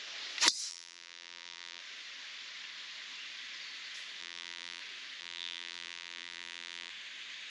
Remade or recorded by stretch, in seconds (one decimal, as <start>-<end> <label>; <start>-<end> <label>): 0.0-0.7 recorded; 0.7-1.8 remade; 1.8-4.2 recorded; 4.2-4.8 remade; 4.8-5.2 recorded; 5.2-6.9 remade; 6.9-7.5 recorded